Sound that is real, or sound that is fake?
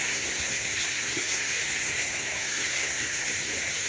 fake